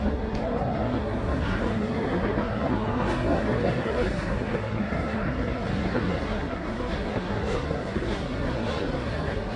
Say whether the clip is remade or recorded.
remade